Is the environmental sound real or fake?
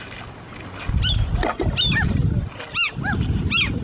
real